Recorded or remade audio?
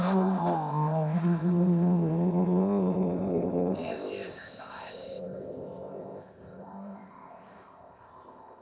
remade